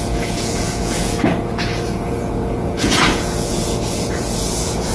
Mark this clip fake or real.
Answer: fake